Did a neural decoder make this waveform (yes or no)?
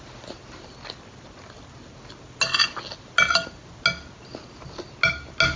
no